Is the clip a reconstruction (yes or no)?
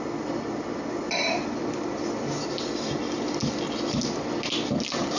no